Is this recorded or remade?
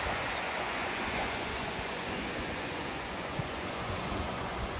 remade